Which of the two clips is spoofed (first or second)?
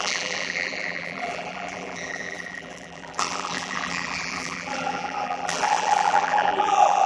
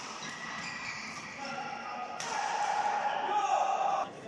first